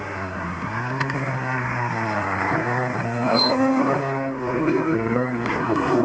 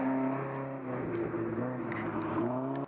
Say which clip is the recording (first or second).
second